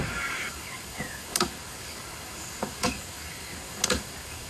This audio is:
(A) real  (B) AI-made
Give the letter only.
B